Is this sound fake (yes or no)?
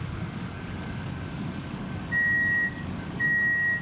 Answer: yes